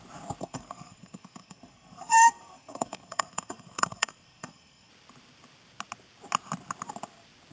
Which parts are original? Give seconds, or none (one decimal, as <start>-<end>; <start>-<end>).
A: 0.0-0.4; 4.9-7.5